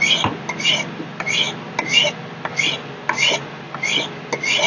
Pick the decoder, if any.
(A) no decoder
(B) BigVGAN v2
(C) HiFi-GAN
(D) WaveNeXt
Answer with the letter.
A